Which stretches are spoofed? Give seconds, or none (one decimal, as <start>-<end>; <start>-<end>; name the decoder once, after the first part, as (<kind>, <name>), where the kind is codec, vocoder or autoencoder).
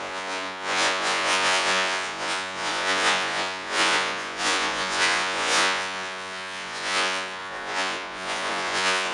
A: 0.0-9.1 (vocoder, Vocos)